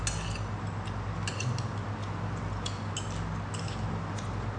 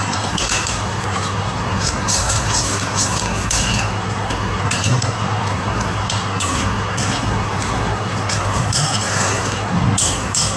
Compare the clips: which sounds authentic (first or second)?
first